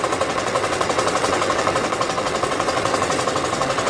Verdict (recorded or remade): remade